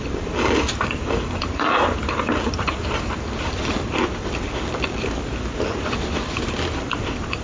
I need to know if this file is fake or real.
fake